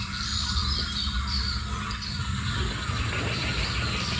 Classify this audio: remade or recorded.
recorded